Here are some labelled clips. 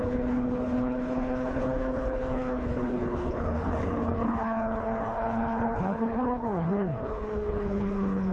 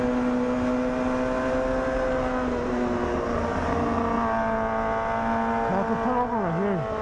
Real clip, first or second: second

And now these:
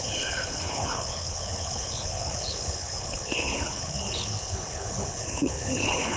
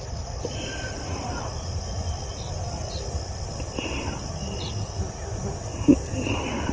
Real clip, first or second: second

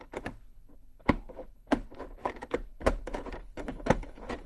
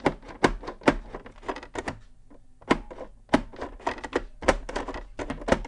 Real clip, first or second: second